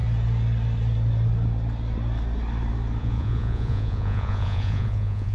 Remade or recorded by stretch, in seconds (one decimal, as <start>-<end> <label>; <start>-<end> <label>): 0.0-3.0 recorded; 3.0-5.3 remade